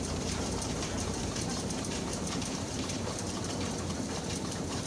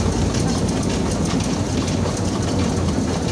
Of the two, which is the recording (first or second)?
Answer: second